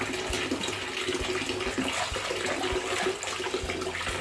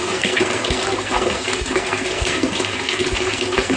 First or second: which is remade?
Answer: second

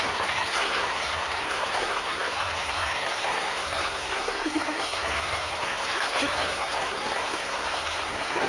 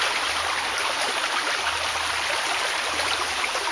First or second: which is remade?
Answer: first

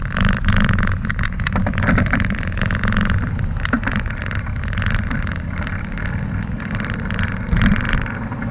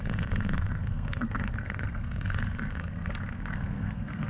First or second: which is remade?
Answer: second